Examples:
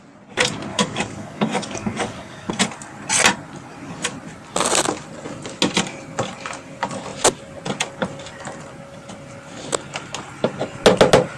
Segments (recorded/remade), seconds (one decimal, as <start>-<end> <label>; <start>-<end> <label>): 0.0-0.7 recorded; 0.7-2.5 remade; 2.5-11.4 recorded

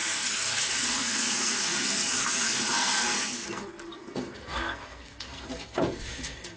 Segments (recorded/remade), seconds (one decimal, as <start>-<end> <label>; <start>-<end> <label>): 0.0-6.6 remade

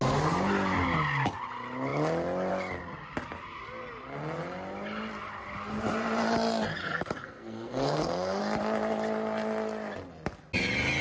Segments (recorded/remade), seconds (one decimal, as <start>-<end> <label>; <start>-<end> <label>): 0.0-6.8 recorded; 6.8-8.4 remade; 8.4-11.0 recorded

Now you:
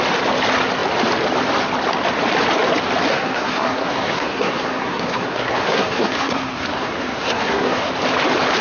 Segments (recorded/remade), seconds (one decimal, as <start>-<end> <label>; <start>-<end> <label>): 0.0-3.1 recorded; 3.1-7.9 remade; 7.9-8.6 recorded

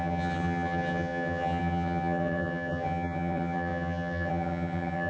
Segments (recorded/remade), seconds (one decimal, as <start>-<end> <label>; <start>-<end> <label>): 0.0-5.1 remade

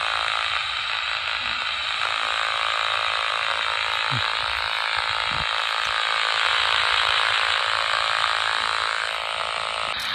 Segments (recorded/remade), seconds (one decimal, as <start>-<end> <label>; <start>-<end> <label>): 0.0-6.5 recorded; 6.5-7.6 remade; 7.6-10.1 recorded

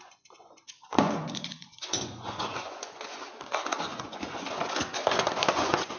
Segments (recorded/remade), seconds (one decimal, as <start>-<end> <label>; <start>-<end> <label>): 0.0-6.0 remade

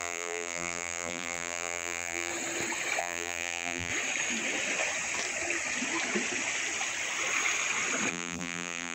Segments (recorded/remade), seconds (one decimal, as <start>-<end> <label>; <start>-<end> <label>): 0.0-2.3 remade; 2.3-3.0 recorded; 3.0-3.9 remade; 3.9-8.1 recorded; 8.1-8.9 remade